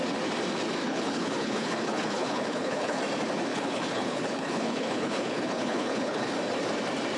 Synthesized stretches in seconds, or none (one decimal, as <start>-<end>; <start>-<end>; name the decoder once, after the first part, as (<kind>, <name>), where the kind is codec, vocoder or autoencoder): 0.8-3.0 (codec, HILCodec); 3.5-6.3